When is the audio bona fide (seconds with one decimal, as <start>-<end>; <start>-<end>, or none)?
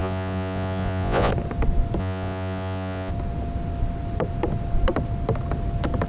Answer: 1.3-2.0; 3.1-6.1